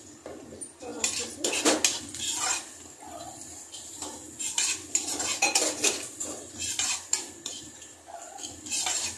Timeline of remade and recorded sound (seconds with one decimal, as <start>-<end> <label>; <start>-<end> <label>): 0.0-9.2 recorded